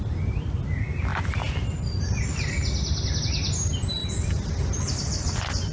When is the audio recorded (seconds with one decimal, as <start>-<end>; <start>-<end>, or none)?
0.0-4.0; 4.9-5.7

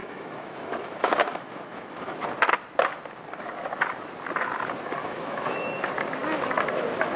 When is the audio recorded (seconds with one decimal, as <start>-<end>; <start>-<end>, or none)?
2.3-5.0; 5.6-7.2

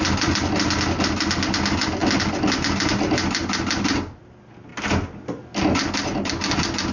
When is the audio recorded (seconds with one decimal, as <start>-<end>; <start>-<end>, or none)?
0.0-6.9

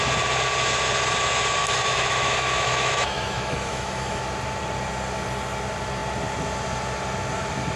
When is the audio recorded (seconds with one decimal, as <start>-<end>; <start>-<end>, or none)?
0.0-1.6; 4.2-7.8

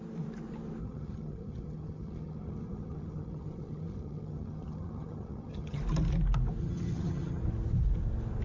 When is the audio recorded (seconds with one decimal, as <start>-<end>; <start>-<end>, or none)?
0.0-0.8; 5.8-6.6; 7.4-8.4

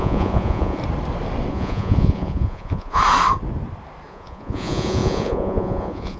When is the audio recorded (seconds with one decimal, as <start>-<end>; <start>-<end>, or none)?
0.8-1.5; 3.0-4.1

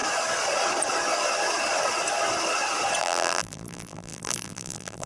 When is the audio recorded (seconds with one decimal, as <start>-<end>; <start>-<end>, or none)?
0.0-3.0